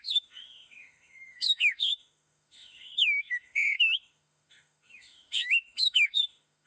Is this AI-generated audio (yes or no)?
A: yes